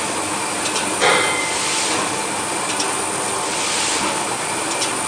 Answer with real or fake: real